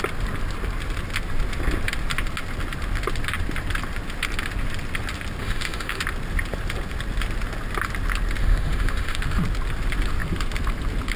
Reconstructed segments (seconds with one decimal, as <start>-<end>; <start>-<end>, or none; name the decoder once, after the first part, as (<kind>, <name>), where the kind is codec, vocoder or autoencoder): 5.4-6.0 (autoencoder, DAC-VAE); 8.4-9.2